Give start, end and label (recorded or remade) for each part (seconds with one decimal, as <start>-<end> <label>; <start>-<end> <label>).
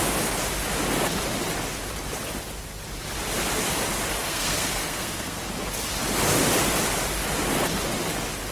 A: 0.0-4.2 recorded; 4.2-5.4 remade; 5.4-8.5 recorded